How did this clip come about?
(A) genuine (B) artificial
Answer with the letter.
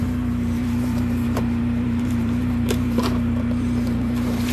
B